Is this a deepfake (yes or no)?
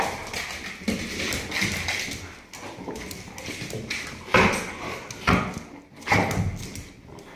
no